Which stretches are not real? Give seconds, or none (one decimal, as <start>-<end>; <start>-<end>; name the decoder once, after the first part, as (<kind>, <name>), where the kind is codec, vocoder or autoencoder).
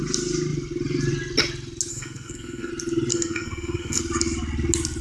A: 1.9-2.7 (codec, SNAC); 3.1-4.0